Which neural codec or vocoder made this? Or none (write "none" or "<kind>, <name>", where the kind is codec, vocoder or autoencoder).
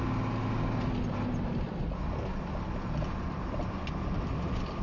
none